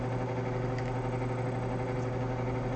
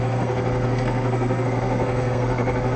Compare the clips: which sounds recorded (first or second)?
first